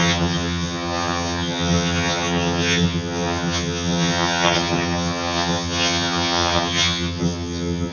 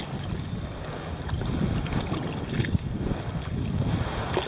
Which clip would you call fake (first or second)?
first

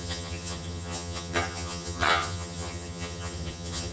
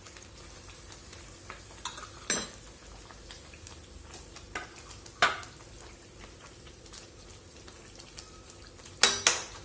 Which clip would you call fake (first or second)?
first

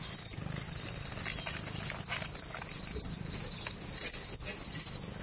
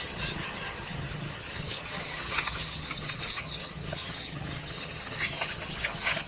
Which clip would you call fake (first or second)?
second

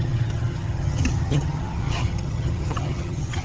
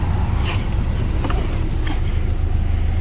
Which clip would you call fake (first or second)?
first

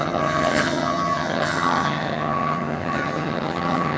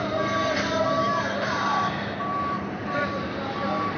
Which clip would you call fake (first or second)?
first